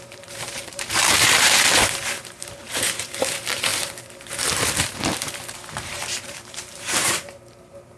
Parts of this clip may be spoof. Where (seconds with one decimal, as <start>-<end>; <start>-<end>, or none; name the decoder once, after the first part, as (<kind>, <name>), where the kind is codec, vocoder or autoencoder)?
0.0-8.0 (vocoder, BigVGAN v2)